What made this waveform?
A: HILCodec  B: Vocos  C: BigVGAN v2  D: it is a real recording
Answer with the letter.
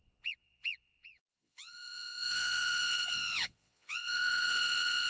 B